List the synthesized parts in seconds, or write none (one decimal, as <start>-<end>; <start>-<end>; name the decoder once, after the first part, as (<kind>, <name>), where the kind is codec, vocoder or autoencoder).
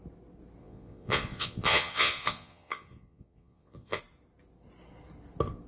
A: 0.6-4.0 (vocoder, Vocos)